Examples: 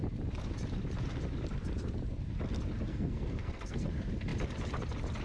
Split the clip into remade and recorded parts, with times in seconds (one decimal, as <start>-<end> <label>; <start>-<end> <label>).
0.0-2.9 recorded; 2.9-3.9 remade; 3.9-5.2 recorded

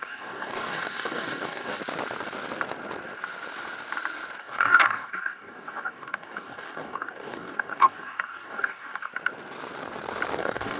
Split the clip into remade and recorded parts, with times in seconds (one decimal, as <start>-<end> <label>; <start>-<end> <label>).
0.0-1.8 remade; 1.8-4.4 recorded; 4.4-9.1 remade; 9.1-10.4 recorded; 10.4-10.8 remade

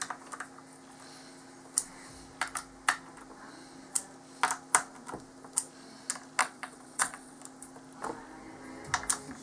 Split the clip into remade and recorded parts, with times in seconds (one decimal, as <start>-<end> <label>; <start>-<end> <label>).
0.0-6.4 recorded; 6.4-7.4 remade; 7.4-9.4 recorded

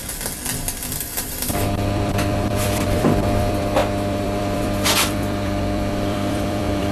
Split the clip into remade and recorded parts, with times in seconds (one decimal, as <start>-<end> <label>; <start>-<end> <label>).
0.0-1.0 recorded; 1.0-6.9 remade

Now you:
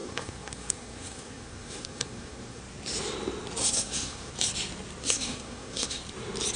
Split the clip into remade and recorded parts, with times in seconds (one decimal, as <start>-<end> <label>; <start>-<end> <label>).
0.0-2.6 remade; 2.6-3.6 recorded; 3.6-4.3 remade; 4.3-5.0 recorded; 5.0-6.0 remade; 6.0-6.6 recorded

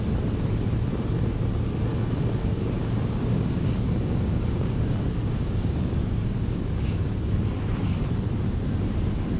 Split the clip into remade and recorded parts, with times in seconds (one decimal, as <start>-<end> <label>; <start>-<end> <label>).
0.0-2.4 recorded; 2.4-7.4 remade; 7.4-9.4 recorded

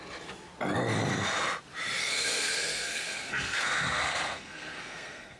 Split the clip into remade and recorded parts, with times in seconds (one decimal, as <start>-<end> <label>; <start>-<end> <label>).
0.0-2.0 recorded; 2.0-5.4 remade